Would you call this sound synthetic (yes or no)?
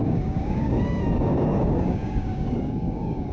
yes